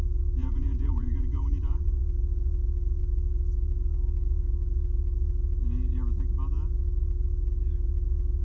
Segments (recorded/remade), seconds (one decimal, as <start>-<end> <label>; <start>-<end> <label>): 0.0-0.4 recorded; 0.4-2.0 remade; 2.0-8.4 recorded